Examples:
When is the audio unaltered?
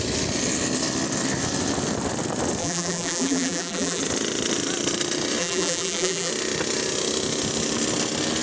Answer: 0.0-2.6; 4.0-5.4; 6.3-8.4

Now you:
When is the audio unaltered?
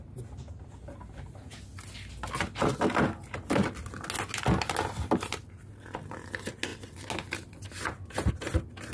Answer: 0.0-8.9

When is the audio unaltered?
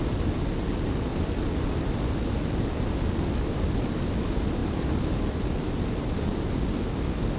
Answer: 0.0-1.1; 2.3-4.6; 5.7-7.4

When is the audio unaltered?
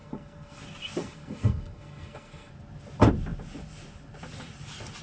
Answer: 0.6-1.0; 2.5-5.0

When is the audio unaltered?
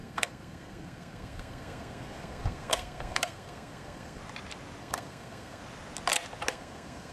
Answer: 4.2-4.8; 5.6-6.5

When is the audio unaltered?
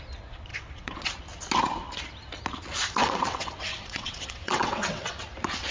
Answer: 0.0-0.5; 1.1-3.0; 5.2-5.7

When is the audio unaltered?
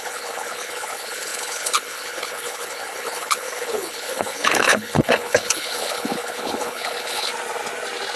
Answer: 7.3-8.2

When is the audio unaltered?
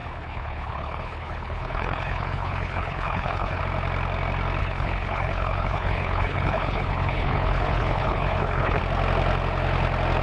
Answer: 3.6-4.6; 8.8-10.2